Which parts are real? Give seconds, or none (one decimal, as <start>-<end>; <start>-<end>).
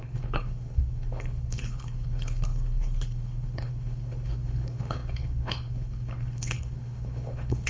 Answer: none